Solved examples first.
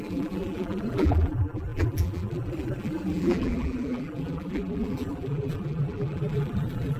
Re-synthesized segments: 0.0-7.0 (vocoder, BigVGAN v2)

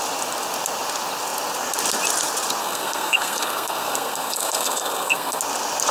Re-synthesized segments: 2.6-5.4 (codec, SNAC)

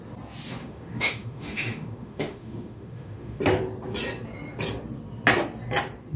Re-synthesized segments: 0.6-3.4 (autoencoder, DAC-VAE)

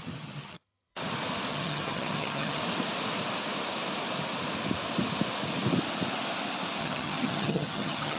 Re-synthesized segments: 0.0-0.9 (vocoder, HiFi-GAN); 1.5-2.6; 6.8-8.2

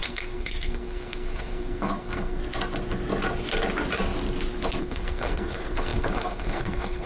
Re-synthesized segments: 0.0-2.4 (codec, SNAC); 4.8-7.1